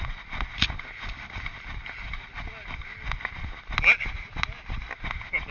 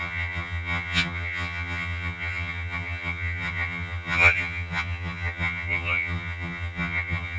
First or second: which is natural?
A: first